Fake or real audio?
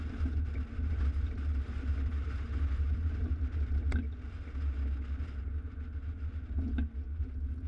real